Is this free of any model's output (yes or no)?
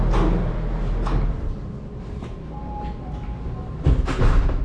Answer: yes